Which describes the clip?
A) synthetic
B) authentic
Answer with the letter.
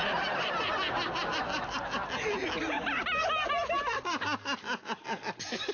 B